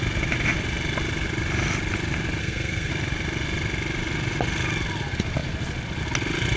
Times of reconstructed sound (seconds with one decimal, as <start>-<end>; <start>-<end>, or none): 2.4-2.9